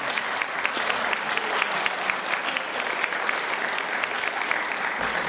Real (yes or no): yes